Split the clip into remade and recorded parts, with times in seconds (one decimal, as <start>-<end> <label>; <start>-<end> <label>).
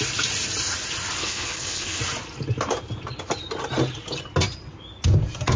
0.0-1.2 recorded; 1.2-2.0 remade; 2.0-5.6 recorded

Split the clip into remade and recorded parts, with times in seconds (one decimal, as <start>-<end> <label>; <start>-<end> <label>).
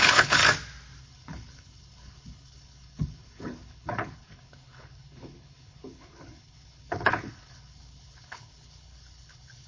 0.0-0.4 remade; 0.4-1.0 recorded; 1.0-9.7 remade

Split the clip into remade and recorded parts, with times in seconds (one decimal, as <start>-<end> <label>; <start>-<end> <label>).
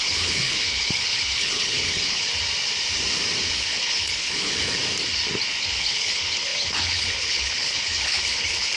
0.0-2.3 remade; 2.3-3.4 recorded; 3.4-4.8 remade; 4.8-5.6 recorded; 5.6-8.8 remade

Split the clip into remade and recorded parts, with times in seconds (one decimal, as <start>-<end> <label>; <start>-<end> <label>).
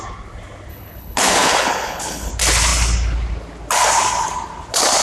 0.0-0.7 recorded; 0.7-2.3 remade; 2.3-5.0 recorded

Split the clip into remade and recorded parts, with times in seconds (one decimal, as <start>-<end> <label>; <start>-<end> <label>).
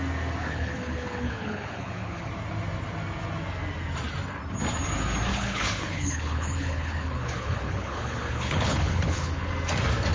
0.0-0.4 recorded; 0.4-2.3 remade; 2.3-5.3 recorded; 5.3-9.5 remade; 9.5-10.1 recorded